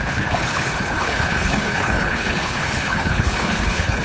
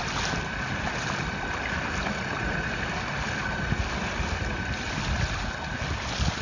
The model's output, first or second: first